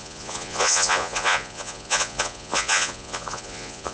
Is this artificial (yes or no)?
yes